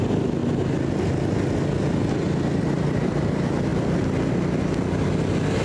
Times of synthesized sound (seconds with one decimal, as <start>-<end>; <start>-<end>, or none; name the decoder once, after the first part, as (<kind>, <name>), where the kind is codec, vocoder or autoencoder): none

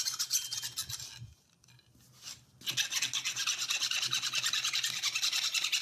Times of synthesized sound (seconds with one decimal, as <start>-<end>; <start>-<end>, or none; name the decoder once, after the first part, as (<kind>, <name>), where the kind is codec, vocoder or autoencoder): none